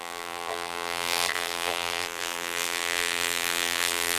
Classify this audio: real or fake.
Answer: fake